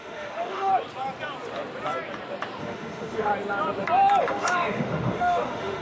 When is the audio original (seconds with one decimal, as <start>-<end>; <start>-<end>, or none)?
0.7-2.6; 3.3-4.2